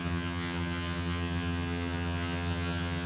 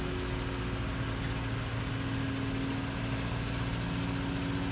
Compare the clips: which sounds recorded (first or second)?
second